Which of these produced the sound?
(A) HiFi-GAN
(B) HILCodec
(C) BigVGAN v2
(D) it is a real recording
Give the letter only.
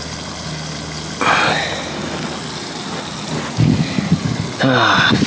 D